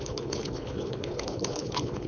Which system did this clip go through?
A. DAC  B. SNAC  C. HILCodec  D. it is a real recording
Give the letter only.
C